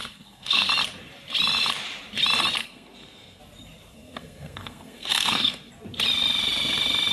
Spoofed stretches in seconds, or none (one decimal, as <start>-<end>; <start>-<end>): 0.0-0.7; 2.6-3.4; 3.9-5.7